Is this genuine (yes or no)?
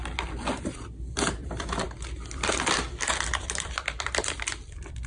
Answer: no